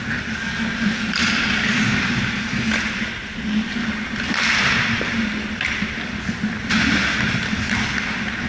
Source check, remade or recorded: recorded